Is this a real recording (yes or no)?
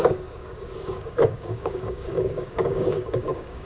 no